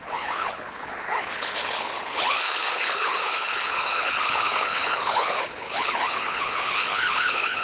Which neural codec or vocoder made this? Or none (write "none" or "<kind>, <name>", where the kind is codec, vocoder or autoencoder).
codec, HILCodec